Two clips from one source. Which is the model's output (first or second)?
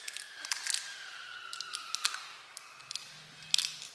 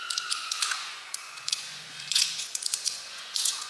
second